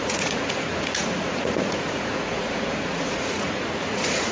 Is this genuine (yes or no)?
no